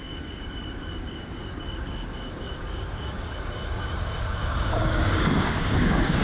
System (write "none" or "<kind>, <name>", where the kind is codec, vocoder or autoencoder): codec, DAC